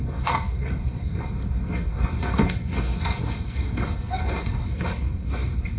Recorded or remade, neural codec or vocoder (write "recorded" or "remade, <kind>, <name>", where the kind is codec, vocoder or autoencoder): remade, codec, SNAC